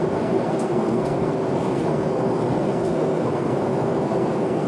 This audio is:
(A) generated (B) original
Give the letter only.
A